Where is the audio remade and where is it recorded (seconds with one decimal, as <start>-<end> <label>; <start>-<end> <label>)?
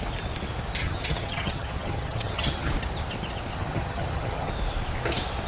0.0-0.8 recorded; 0.8-2.7 remade; 2.7-3.5 recorded; 3.5-4.5 remade; 4.5-5.5 recorded